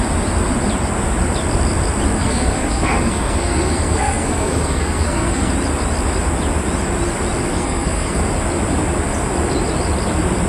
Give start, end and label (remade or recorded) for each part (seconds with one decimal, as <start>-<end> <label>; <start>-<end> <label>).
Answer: 0.0-2.2 recorded; 2.2-5.5 remade; 5.5-7.5 recorded; 7.5-8.2 remade; 8.2-10.5 recorded